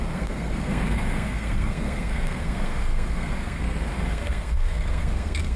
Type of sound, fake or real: fake